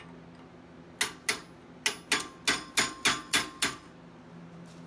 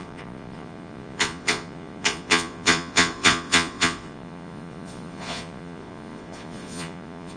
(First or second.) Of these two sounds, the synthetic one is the second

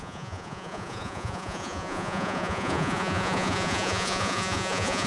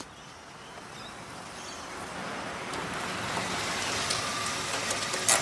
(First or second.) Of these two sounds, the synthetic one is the first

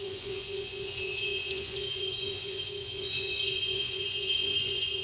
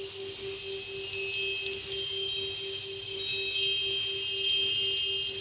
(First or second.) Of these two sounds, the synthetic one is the first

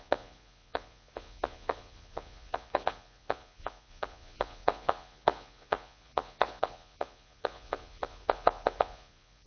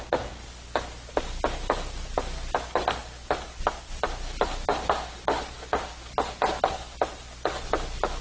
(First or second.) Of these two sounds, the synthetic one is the first